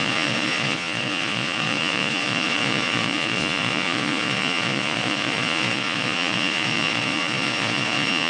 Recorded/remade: remade